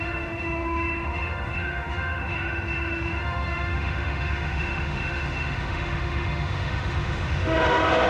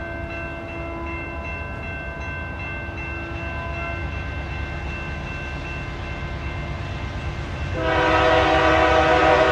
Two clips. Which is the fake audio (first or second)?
first